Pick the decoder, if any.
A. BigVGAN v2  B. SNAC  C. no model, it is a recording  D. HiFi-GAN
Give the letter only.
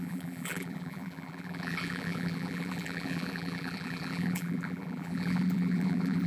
A